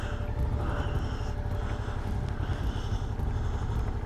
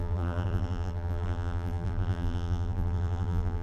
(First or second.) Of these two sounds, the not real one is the second